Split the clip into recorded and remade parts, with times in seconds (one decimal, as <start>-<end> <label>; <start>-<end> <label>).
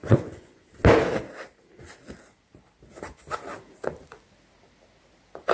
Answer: 0.0-0.6 remade; 0.6-5.5 recorded